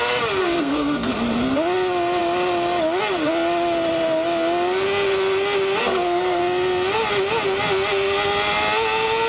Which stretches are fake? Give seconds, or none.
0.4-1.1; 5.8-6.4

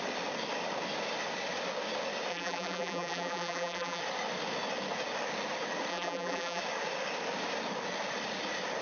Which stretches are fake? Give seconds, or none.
2.3-4.0; 5.9-6.6

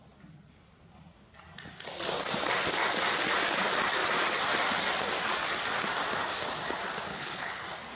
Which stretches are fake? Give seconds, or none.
7.1-7.6

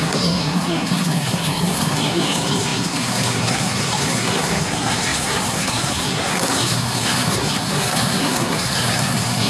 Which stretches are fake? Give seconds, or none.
0.0-9.5

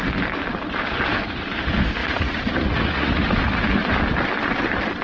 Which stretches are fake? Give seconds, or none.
2.0-3.3

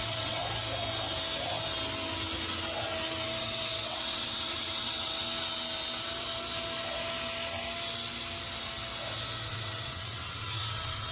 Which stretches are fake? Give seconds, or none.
0.0-0.4; 3.4-5.2; 9.5-11.1